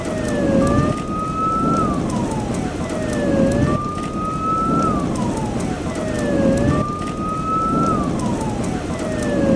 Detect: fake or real real